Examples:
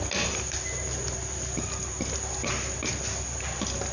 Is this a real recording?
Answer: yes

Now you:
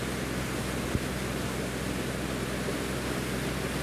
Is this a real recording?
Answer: yes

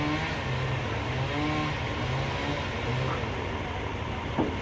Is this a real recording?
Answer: yes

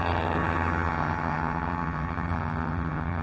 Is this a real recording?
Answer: no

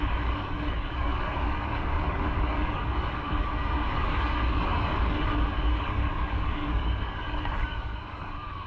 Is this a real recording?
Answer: no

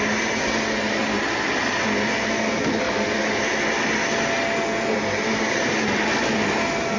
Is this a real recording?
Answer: yes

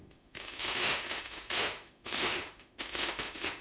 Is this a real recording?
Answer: no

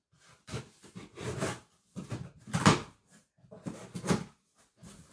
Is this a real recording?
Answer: yes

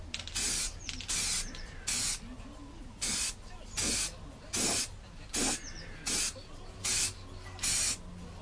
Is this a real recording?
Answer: yes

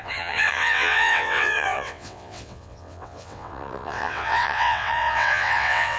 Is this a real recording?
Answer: no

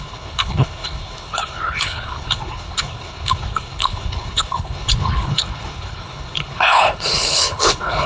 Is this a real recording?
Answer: no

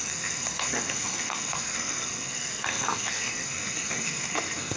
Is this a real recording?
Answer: no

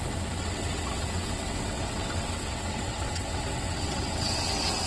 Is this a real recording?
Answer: no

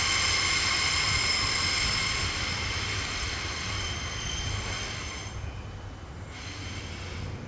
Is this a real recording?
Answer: yes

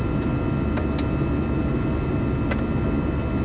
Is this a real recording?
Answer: yes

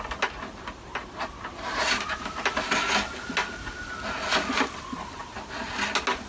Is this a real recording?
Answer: yes